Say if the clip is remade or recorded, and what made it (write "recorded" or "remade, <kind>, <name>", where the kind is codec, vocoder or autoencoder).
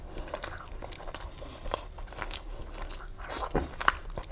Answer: recorded